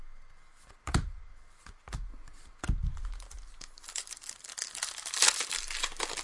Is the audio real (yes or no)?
yes